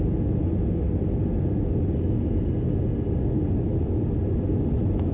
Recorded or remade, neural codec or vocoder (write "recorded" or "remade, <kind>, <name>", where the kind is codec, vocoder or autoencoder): recorded